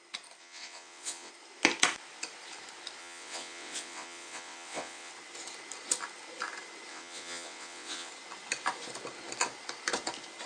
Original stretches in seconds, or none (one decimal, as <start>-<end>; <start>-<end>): 0.0-0.4; 1.3-3.0; 5.1-6.9; 8.1-10.5